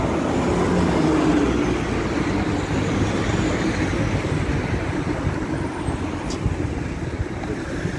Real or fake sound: real